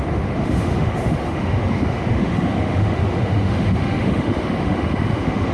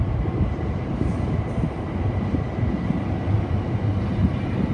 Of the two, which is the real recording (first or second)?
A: second